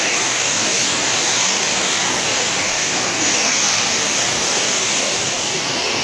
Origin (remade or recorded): remade